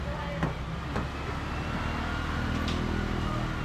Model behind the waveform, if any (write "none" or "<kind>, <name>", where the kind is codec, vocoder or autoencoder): none